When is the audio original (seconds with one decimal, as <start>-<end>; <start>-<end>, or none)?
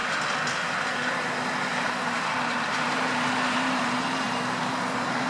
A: 0.0-1.7